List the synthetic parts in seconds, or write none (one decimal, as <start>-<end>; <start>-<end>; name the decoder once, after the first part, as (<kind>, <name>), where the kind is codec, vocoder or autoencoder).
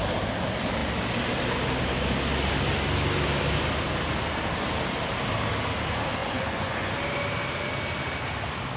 6.2-6.9 (vocoder, Vocos)